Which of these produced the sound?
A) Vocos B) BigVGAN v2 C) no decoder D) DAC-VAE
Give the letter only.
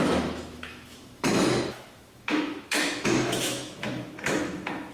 D